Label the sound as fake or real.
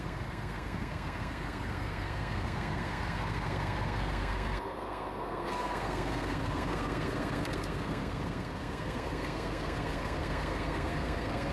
fake